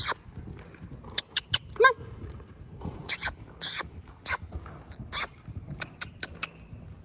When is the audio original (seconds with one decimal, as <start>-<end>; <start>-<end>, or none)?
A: 0.0-2.0; 3.1-7.0